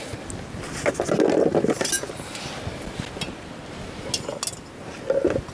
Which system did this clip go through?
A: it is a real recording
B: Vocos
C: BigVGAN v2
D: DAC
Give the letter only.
A